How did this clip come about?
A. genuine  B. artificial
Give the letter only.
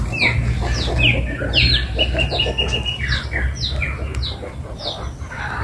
A